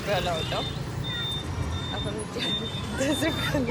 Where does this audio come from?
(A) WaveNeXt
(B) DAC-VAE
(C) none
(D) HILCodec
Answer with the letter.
C